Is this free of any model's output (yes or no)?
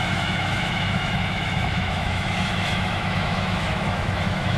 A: no